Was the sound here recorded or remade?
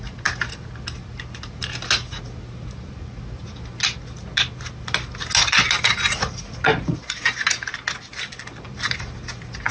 recorded